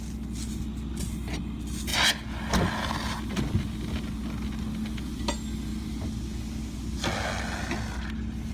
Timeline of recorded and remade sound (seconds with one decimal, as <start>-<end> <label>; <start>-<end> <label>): 0.0-8.5 recorded